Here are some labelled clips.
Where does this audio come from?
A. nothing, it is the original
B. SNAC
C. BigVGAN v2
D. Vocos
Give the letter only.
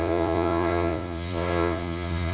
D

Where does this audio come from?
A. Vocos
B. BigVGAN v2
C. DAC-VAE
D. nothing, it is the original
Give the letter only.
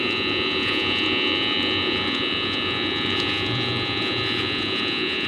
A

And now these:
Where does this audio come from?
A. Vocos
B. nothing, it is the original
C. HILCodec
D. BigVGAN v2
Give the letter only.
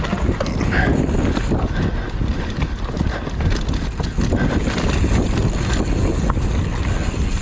B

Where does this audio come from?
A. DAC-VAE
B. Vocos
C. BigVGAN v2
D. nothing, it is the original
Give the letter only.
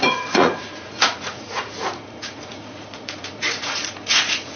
B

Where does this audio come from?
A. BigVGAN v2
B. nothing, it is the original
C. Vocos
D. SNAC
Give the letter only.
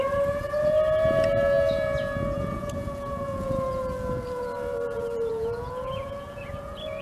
C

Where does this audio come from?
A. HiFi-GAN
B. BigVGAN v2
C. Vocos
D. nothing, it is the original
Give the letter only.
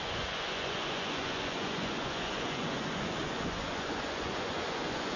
C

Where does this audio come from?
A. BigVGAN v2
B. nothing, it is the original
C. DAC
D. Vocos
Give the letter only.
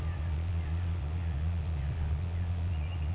D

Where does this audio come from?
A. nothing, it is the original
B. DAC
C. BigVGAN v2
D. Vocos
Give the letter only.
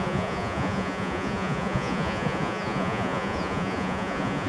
D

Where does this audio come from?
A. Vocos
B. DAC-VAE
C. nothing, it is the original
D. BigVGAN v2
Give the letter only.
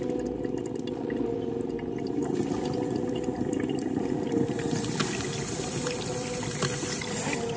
C